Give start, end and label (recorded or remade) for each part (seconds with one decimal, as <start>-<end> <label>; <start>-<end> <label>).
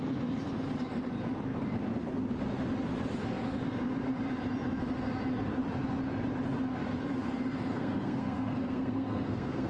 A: 0.0-7.7 recorded; 7.7-9.7 remade